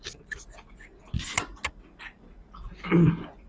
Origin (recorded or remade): recorded